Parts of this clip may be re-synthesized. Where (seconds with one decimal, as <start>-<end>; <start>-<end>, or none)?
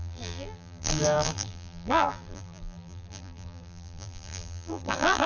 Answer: 0.0-5.3